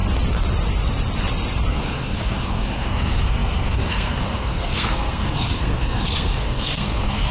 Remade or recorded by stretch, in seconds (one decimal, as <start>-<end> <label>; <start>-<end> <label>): 0.0-1.7 recorded; 1.7-7.3 remade